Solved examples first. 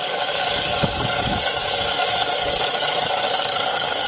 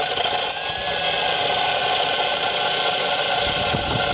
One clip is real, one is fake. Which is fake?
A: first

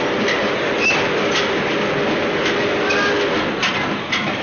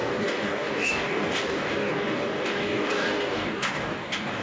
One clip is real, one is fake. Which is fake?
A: second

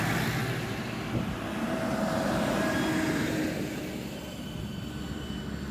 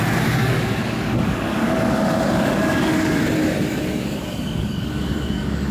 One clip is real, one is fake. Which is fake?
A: second